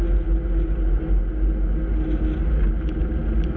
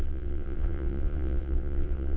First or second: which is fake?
second